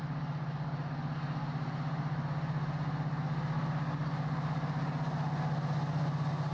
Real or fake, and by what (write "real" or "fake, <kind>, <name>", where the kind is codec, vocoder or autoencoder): real